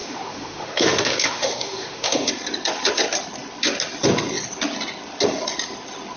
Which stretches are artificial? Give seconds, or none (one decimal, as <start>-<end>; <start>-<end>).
0.0-2.3

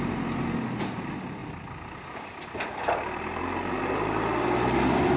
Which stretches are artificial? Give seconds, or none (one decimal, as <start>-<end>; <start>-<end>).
none